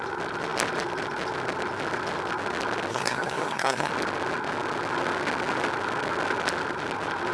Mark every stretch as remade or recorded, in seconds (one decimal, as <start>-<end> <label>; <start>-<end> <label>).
0.0-2.9 recorded; 2.9-3.9 remade; 3.9-7.3 recorded